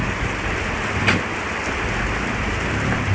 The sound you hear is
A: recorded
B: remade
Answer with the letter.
A